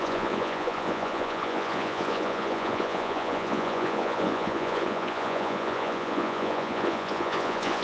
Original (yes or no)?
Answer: no